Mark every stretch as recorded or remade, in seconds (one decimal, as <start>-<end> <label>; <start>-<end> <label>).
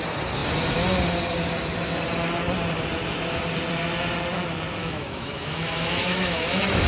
0.0-4.8 recorded; 4.8-6.9 remade